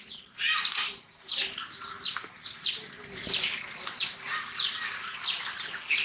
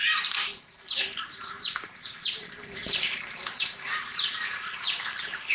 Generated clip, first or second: second